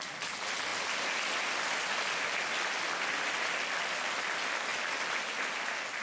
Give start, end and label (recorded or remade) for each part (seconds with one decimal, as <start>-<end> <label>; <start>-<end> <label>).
0.0-6.0 recorded